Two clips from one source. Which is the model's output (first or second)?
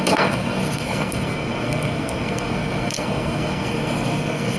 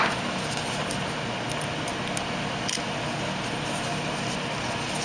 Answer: first